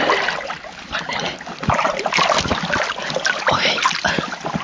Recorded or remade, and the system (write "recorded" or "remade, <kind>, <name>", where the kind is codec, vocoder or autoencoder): recorded